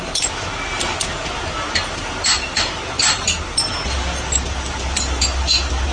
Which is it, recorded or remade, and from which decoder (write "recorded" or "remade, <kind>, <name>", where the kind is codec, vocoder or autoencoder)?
recorded